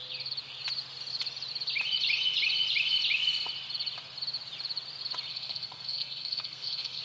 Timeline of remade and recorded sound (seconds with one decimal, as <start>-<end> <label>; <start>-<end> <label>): 0.0-5.3 recorded; 5.3-7.0 remade